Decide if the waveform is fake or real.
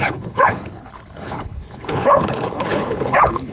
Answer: fake